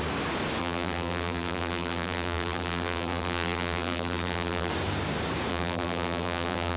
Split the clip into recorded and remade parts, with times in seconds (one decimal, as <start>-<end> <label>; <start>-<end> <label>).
0.0-0.6 recorded; 0.6-4.7 remade; 4.7-5.5 recorded; 5.5-6.8 remade